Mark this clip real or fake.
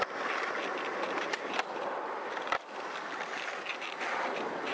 real